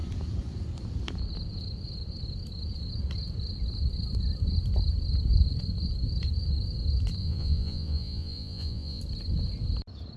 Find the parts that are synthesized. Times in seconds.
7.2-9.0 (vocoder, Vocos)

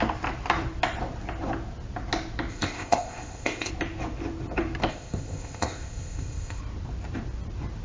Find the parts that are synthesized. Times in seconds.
2.5-3.7 (codec, ZipCodec); 4.9-6.6

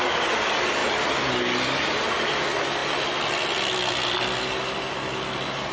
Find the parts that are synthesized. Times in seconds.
none

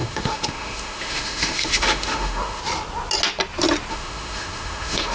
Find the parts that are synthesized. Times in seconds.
0.0-2.6 (autoencoder, DAC-VAE); 3.9-5.1

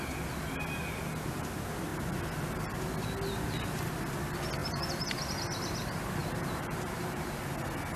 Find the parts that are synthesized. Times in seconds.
6.2-7.4 (vocoder, BigVGAN v2)